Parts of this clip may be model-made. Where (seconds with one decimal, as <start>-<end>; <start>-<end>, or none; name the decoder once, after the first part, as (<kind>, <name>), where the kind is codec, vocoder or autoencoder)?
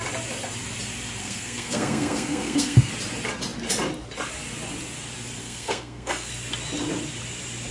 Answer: 1.2-2.9 (codec, SNAC); 5.4-6.3